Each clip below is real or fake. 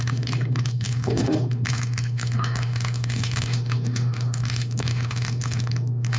fake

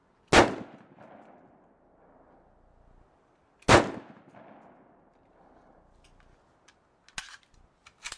real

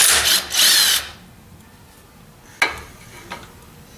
real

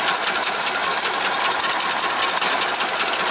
real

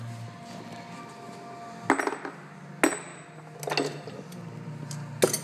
real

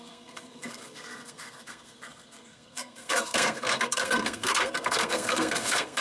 fake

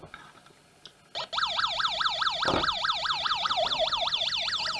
real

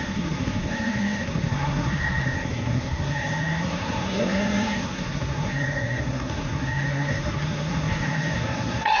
fake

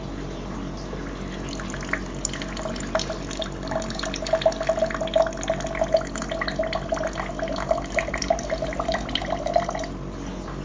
real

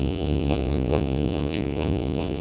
fake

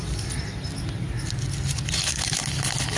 real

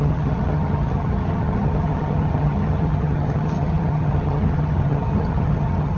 fake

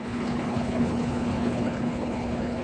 fake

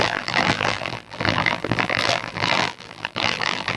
fake